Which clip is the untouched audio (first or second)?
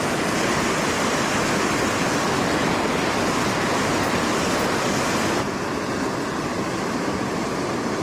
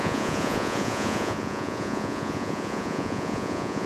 first